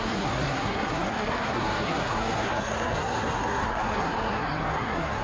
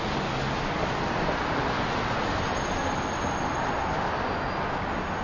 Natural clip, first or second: second